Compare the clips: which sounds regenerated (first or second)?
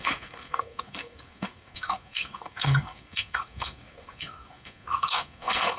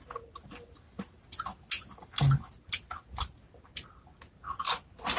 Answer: first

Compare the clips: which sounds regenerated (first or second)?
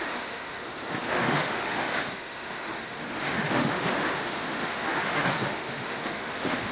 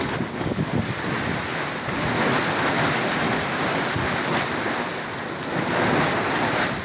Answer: first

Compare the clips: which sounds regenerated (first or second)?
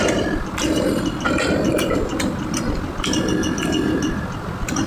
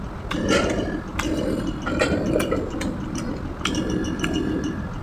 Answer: first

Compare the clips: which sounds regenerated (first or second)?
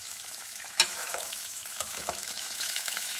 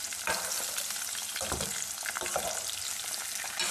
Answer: first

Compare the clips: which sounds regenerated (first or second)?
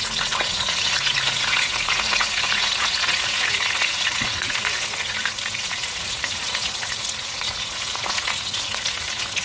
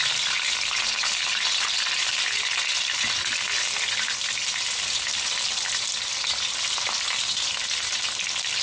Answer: first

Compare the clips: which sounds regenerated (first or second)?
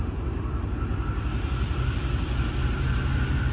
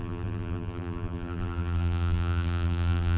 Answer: second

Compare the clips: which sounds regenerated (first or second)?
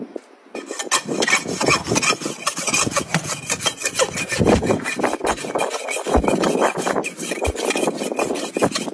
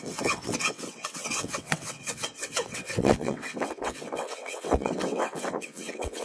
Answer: second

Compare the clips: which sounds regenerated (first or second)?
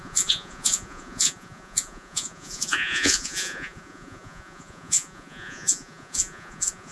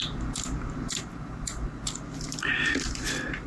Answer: first